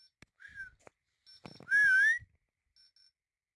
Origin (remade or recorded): recorded